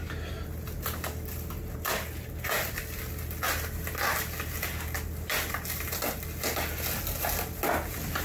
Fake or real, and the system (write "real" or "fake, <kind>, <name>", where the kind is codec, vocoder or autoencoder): real